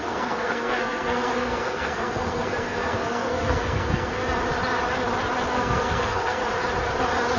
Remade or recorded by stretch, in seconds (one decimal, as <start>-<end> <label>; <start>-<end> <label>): 0.0-4.2 remade; 4.2-5.5 recorded; 5.5-6.4 remade; 6.4-7.4 recorded

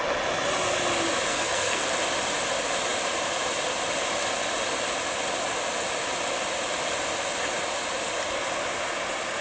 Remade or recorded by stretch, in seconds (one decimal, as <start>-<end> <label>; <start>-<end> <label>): 0.0-1.3 recorded; 1.3-1.9 remade; 1.9-9.4 recorded